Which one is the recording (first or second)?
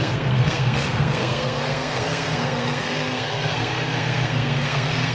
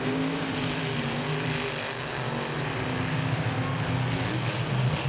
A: second